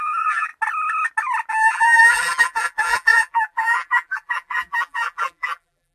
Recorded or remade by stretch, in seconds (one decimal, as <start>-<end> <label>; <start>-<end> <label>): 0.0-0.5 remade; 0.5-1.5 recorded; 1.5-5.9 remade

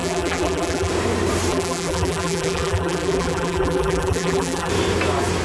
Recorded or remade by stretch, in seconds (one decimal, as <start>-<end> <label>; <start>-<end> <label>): 0.0-0.9 remade; 0.9-1.5 recorded; 1.5-4.7 remade; 4.7-5.4 recorded

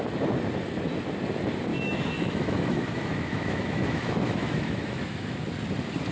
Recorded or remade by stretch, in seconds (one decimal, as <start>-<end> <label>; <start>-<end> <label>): 0.0-1.7 recorded; 1.7-5.4 remade; 5.4-6.1 recorded